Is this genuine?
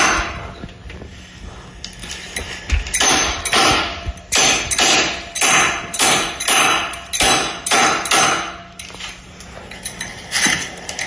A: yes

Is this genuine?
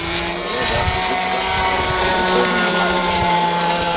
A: no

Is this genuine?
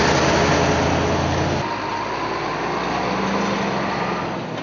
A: yes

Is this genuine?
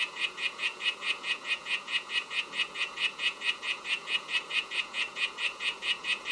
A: no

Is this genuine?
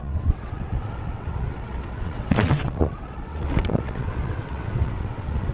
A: no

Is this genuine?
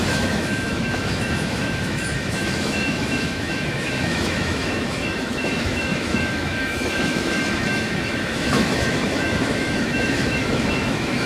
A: no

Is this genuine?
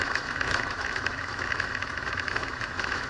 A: no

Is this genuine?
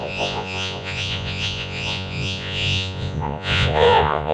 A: no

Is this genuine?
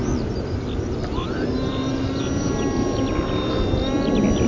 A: yes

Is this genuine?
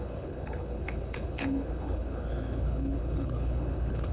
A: no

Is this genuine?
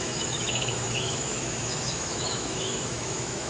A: no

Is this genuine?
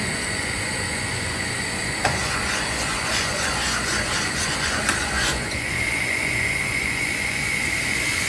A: no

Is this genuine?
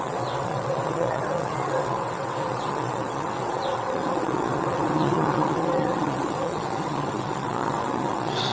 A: no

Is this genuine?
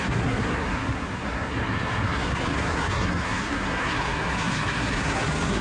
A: no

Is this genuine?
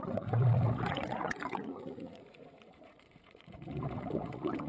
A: no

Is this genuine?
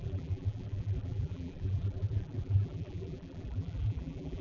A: no